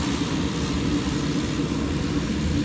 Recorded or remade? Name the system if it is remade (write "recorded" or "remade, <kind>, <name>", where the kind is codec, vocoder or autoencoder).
recorded